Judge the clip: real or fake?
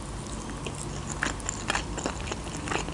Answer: real